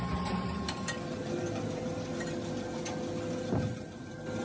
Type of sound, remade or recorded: recorded